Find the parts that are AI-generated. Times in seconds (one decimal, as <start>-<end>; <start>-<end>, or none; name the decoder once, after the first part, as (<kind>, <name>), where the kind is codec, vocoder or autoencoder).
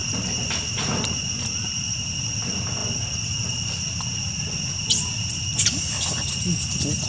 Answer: none